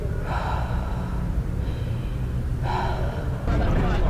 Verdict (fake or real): fake